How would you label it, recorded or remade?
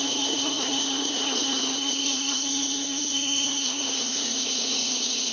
remade